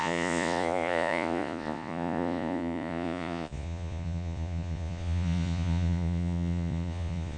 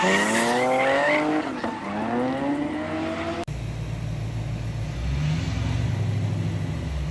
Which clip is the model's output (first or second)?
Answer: first